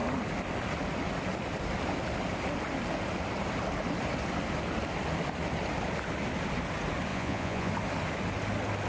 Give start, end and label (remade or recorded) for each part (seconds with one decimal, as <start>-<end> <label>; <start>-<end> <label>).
0.0-7.1 recorded; 7.1-7.7 remade; 7.7-8.9 recorded